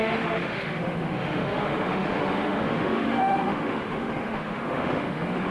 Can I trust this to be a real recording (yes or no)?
no